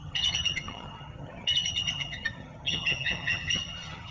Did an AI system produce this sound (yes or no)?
yes